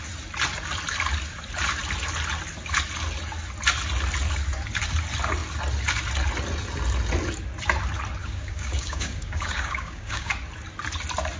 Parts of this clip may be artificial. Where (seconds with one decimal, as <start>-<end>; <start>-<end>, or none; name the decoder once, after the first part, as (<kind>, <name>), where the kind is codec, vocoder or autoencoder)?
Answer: 8.2-10.3 (codec, DAC)